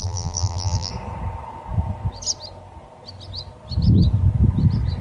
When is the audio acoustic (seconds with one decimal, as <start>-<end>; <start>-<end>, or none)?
0.9-5.0